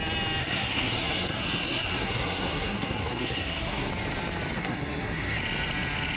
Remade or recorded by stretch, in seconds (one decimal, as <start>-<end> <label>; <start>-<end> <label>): 0.0-0.4 recorded; 0.4-3.9 remade; 3.9-4.6 recorded; 4.6-5.4 remade; 5.4-6.2 recorded

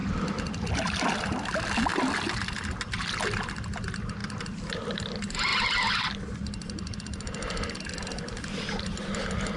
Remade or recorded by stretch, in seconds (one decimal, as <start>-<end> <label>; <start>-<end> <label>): 0.0-9.6 recorded

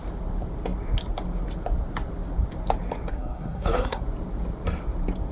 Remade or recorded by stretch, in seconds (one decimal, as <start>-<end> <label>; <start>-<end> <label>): 0.0-3.1 recorded; 3.1-4.0 remade; 4.0-5.3 recorded